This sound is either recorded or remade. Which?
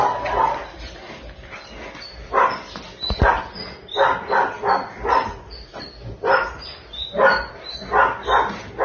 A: recorded